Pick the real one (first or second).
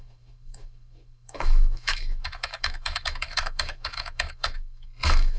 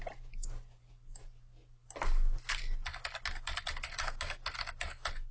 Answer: second